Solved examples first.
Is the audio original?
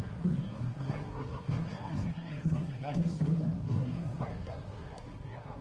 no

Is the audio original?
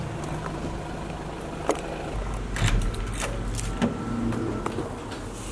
yes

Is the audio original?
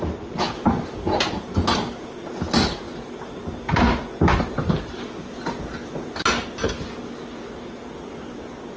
yes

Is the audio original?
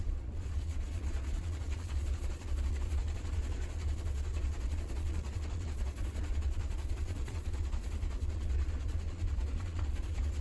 no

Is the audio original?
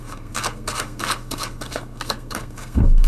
no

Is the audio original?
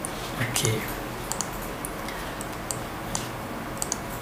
yes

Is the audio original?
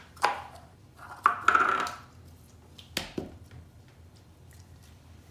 yes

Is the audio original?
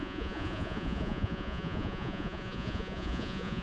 no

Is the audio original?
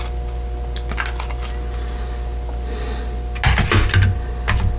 yes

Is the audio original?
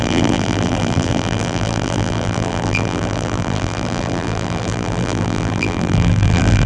no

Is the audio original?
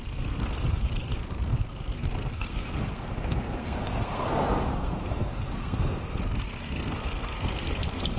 no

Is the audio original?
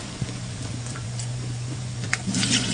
no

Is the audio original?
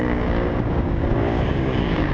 no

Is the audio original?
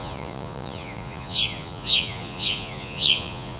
no